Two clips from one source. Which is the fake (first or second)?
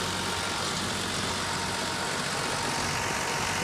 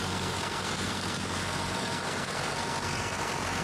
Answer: second